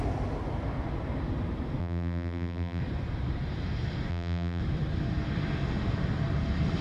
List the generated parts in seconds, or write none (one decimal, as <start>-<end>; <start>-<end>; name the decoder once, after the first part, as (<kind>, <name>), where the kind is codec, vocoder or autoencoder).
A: 1.8-2.8 (vocoder, BigVGAN v2); 4.1-4.6